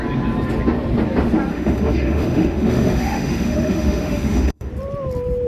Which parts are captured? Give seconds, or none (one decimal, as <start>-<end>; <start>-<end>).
0.0-1.5; 4.7-5.5